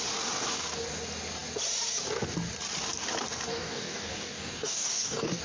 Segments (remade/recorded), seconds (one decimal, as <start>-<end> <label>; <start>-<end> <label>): 0.0-3.5 recorded; 3.5-5.4 remade